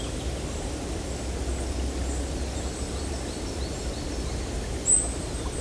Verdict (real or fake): real